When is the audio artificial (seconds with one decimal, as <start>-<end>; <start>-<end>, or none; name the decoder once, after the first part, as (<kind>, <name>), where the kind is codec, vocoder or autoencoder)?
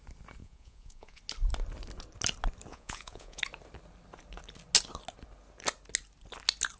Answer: 0.4-1.2 (vocoder, Vocos); 2.7-3.4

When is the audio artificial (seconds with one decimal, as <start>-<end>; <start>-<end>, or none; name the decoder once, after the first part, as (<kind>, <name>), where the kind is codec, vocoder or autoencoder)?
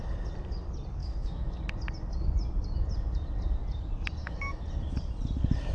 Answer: 1.0-1.6 (autoencoder, DAC-VAE); 4.2-4.7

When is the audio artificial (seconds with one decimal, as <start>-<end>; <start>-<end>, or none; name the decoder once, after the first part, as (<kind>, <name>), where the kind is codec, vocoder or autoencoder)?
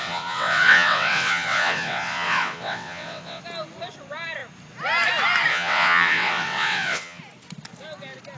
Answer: 0.0-3.4 (vocoder, WaveNeXt); 5.5-7.2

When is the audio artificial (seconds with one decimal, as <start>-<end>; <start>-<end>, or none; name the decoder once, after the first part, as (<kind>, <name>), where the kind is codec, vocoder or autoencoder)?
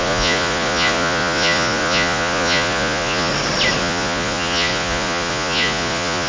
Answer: 0.0-3.3 (vocoder, Vocos); 3.8-6.3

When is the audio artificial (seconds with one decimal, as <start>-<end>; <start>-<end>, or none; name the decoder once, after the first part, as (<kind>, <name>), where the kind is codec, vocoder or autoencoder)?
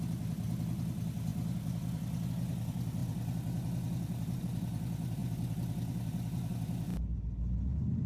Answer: none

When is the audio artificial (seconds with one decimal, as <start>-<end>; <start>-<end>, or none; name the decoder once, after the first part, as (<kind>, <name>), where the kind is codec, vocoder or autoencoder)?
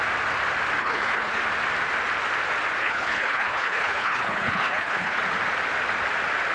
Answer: 0.8-1.4 (codec, HILCodec); 2.8-5.2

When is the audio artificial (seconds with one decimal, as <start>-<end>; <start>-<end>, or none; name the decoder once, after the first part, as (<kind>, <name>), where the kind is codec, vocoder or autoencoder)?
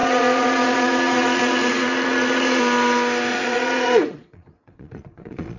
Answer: 0.0-2.6 (vocoder, Vocos); 3.3-5.6